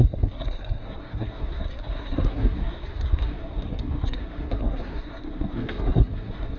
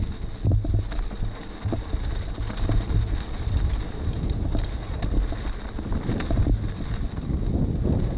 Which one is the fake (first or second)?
first